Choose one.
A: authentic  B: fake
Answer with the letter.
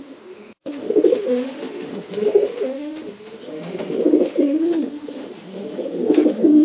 B